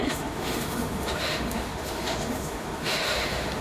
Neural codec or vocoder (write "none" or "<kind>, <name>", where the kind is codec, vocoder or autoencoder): autoencoder, DAC-VAE